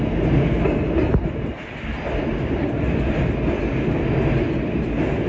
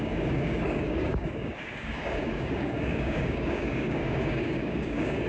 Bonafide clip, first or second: first